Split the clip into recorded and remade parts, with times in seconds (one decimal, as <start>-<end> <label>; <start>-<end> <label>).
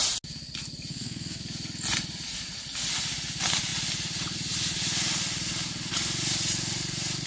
0.0-0.9 recorded; 0.9-1.4 remade; 1.4-7.3 recorded